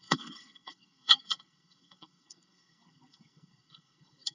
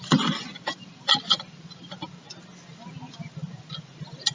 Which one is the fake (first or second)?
first